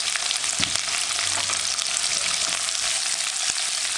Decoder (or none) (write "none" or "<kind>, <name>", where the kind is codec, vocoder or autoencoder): none